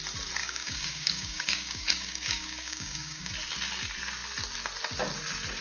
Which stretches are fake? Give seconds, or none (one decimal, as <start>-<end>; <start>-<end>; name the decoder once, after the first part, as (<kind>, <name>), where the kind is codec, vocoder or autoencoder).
0.4-3.3 (codec, DAC)